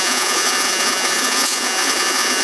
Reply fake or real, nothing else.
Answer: fake